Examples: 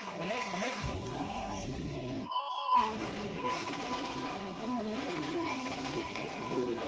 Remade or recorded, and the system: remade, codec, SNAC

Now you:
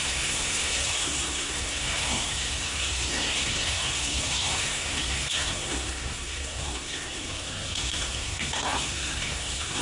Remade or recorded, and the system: remade, codec, SNAC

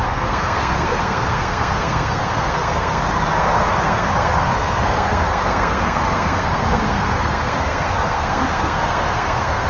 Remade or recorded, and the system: remade, codec, SNAC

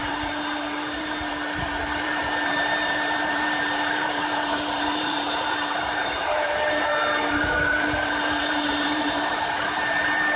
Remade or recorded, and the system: remade, vocoder, BigVGAN v2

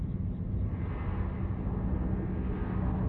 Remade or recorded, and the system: recorded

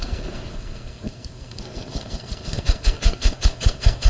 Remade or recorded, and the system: remade, codec, SNAC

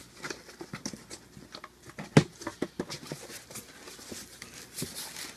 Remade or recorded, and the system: recorded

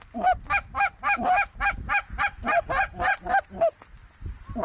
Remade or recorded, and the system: recorded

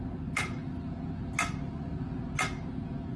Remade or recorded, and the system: recorded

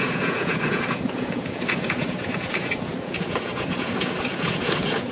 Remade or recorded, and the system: remade, vocoder, Vocos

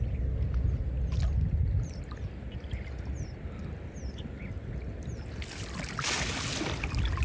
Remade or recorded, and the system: recorded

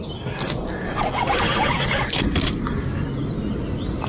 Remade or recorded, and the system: recorded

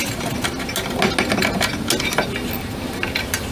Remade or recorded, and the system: recorded